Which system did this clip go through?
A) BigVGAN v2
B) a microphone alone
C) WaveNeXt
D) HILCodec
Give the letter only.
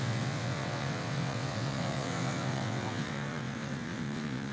C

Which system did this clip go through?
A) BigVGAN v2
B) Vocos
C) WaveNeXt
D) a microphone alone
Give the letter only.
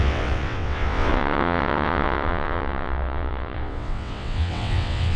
C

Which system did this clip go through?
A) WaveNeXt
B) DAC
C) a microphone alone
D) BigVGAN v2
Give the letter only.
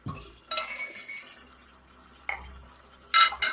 C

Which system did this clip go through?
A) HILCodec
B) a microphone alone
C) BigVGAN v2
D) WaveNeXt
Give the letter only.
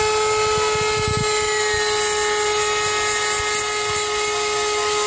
B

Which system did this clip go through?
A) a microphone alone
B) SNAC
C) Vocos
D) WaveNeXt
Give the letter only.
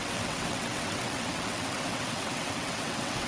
D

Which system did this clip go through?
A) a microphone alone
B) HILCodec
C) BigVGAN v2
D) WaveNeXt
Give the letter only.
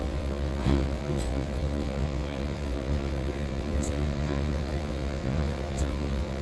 D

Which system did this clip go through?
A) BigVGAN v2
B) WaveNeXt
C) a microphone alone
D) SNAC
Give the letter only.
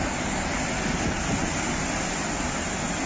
C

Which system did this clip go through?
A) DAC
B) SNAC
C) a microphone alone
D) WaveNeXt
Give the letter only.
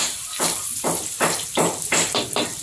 C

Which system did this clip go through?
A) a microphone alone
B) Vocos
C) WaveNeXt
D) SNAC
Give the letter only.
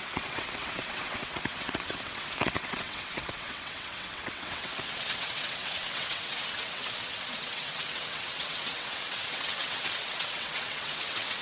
C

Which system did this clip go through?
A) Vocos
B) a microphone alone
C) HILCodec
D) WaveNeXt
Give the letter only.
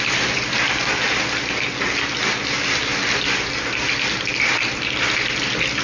B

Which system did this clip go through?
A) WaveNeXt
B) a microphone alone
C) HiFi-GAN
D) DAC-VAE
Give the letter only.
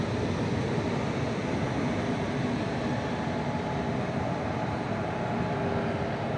B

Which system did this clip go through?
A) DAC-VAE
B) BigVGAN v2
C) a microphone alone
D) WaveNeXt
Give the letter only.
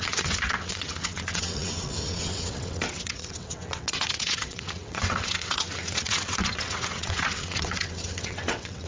D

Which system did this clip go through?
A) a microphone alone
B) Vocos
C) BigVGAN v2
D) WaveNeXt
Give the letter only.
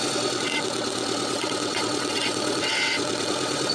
D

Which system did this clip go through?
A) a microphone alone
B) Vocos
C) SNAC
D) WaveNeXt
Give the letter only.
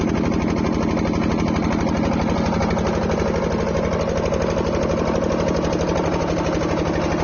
A